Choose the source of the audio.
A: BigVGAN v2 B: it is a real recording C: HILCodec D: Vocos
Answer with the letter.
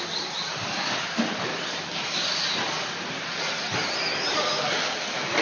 A